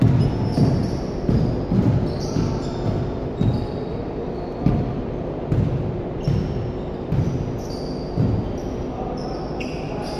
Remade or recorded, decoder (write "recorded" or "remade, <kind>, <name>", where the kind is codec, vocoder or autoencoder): recorded